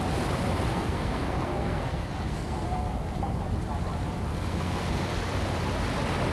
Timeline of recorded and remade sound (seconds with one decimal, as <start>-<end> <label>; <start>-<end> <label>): 0.0-0.7 recorded; 0.7-3.4 remade; 3.4-4.3 recorded; 4.3-5.1 remade; 5.1-6.3 recorded